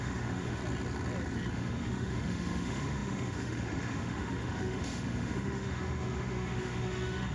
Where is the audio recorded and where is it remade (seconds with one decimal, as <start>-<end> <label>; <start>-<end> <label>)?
0.0-0.6 remade; 0.6-1.5 recorded; 1.5-7.3 remade